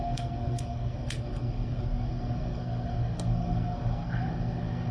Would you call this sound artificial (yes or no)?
yes